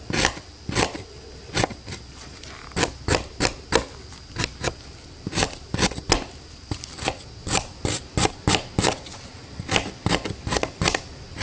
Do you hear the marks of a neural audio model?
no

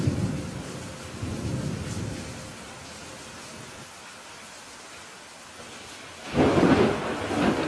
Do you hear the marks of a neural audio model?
no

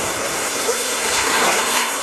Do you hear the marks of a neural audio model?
yes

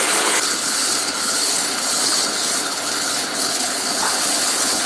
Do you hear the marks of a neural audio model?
yes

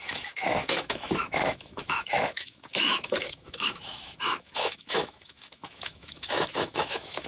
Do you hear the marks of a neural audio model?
yes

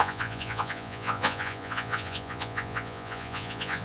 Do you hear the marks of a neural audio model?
yes